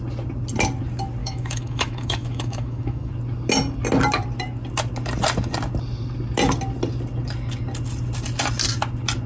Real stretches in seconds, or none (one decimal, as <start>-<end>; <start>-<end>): 0.0-1.2; 3.1-9.3